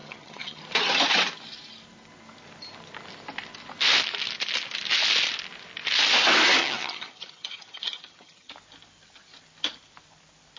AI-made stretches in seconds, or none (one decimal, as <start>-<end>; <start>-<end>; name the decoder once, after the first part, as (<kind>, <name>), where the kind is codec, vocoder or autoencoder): 0.0-0.6 (vocoder, HiFi-GAN); 6.6-8.5